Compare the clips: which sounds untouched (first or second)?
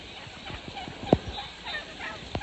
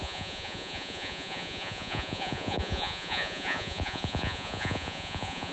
first